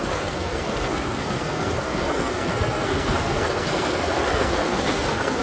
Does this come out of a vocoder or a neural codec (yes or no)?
yes